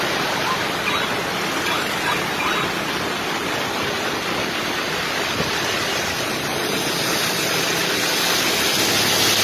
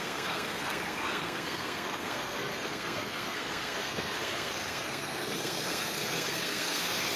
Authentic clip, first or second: first